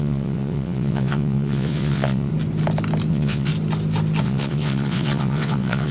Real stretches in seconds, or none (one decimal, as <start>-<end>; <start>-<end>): 2.3-3.1; 3.5-4.2